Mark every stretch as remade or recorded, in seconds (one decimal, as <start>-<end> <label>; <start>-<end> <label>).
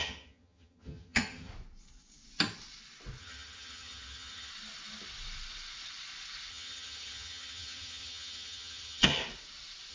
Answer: 0.0-1.5 remade; 1.5-3.2 recorded; 3.2-4.5 remade; 4.5-6.5 recorded; 6.5-9.2 remade; 9.2-9.9 recorded